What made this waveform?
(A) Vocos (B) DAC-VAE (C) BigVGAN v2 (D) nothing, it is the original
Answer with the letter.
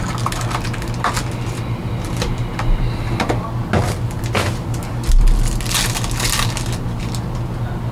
D